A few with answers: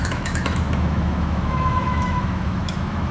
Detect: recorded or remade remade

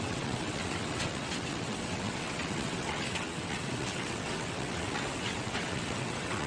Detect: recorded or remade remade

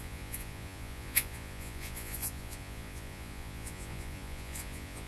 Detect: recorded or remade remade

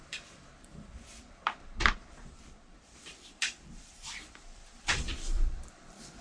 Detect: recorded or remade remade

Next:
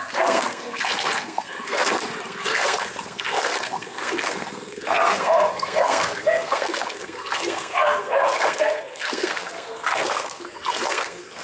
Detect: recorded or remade remade